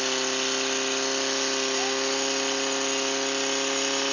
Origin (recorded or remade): recorded